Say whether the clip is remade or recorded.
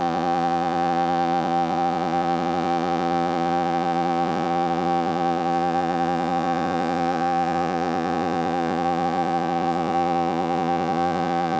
remade